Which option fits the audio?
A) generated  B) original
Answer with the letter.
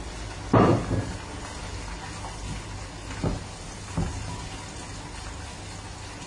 B